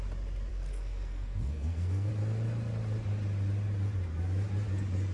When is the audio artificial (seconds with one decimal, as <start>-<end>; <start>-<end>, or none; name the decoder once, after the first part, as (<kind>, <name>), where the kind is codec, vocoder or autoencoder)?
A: 0.5-2.1 (codec, SNAC)